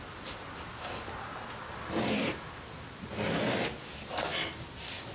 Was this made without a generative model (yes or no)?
yes